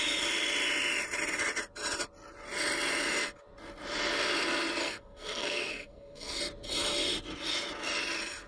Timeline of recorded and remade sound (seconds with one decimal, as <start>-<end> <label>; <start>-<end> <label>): 0.0-4.8 recorded; 4.8-6.4 remade; 6.4-8.5 recorded